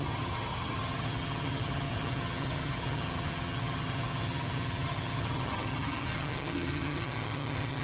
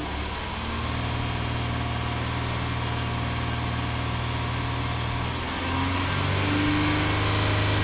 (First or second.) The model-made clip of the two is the first